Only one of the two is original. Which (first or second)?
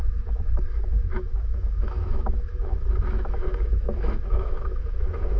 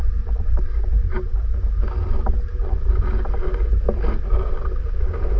second